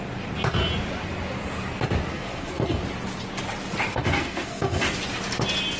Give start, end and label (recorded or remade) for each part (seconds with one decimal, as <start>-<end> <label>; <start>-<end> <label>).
0.0-2.1 recorded; 2.1-2.8 remade; 2.8-3.9 recorded; 3.9-4.8 remade; 4.8-5.8 recorded